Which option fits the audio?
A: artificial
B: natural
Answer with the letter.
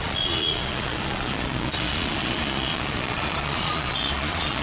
A